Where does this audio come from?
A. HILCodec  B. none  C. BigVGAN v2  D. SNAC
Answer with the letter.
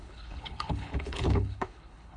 A